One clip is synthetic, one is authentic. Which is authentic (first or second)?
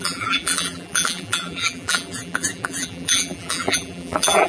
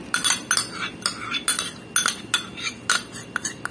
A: second